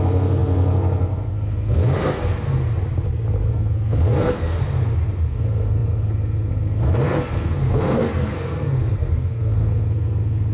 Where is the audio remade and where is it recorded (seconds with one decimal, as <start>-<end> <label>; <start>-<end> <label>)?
0.0-2.6 remade; 2.6-3.5 recorded; 3.5-10.5 remade